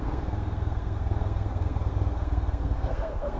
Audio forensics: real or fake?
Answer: fake